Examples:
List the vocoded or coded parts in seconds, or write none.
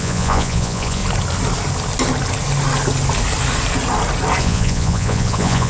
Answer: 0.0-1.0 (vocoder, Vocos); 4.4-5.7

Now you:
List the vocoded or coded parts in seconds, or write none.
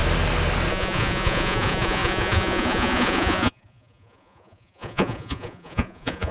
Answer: 0.7-6.3 (vocoder, Vocos)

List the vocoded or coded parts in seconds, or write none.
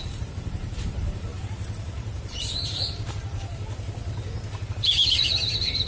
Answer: 0.0-4.0 (vocoder, BigVGAN v2); 4.7-5.9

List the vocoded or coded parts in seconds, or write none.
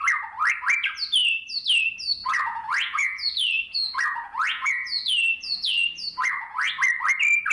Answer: 2.2-6.7 (vocoder, Vocos)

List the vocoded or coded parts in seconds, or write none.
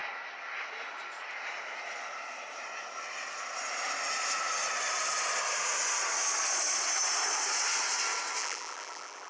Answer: 8.4-9.3 (vocoder, BigVGAN v2)